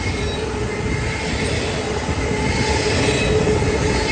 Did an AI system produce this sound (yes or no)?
no